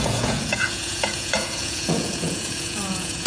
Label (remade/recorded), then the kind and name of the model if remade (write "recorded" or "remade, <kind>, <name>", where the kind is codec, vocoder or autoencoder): remade, vocoder, Vocos